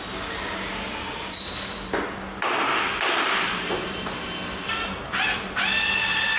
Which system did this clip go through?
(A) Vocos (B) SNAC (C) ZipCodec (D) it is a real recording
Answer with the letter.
D